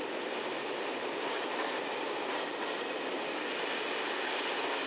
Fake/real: real